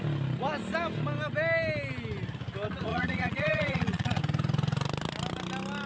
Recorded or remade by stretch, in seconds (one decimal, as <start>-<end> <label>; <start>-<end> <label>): 0.0-2.9 recorded; 2.9-4.2 remade; 4.2-5.9 recorded